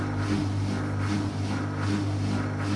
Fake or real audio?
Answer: real